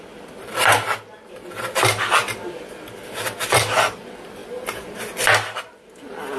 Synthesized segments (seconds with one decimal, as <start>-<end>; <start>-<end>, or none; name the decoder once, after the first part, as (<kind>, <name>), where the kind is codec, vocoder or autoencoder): 0.0-4.4 (vocoder, BigVGAN v2); 5.7-6.4